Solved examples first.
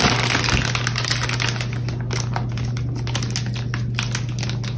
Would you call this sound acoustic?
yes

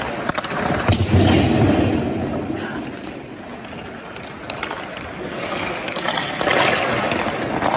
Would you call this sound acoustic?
yes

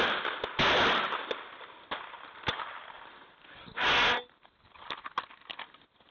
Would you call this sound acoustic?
yes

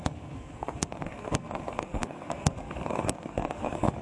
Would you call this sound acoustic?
no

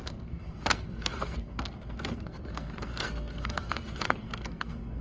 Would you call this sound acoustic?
no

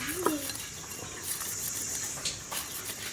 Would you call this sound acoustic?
yes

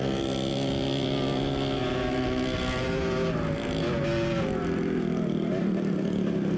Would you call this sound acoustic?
yes